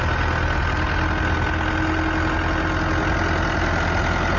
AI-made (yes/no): no